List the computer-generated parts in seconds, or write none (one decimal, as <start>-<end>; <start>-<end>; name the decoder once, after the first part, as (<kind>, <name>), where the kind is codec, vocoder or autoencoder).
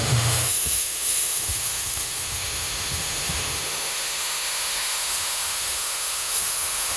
0.0-7.0 (autoencoder, DAC-VAE)